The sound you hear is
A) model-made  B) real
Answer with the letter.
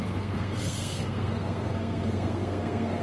A